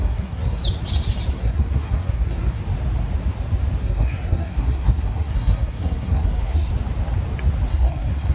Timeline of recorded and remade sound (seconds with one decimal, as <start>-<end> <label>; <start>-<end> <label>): 0.0-0.6 remade; 0.6-1.3 recorded; 1.3-2.6 remade; 2.6-3.8 recorded; 3.8-6.7 remade; 6.7-7.7 recorded; 7.7-8.3 remade